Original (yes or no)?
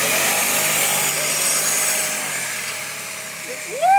yes